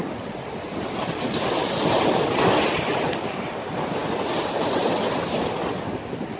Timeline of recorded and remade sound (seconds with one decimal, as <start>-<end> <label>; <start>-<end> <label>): 0.0-6.4 recorded